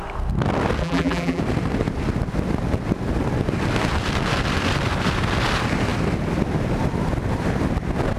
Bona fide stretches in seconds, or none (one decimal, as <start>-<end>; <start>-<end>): 0.0-0.8; 1.4-8.2

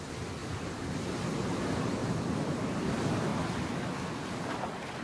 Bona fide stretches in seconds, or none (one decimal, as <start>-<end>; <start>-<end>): 0.0-2.0; 2.9-5.0

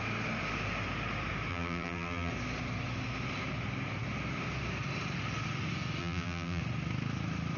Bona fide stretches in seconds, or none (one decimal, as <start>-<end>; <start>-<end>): 0.0-1.5; 2.3-6.0; 6.6-7.6